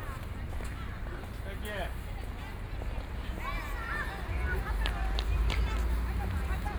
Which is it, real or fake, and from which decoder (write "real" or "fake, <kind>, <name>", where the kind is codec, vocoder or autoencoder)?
real